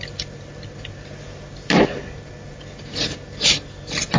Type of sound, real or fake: real